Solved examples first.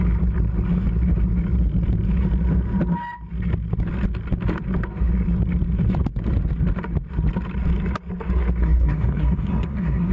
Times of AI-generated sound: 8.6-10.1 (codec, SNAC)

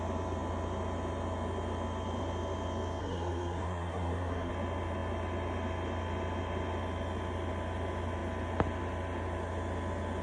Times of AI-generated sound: 3.0-4.5 (codec, SNAC)